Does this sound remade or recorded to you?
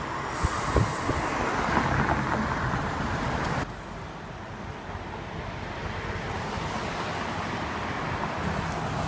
recorded